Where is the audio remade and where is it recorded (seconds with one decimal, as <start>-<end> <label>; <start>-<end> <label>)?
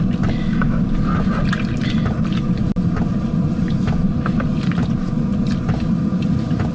0.0-6.7 recorded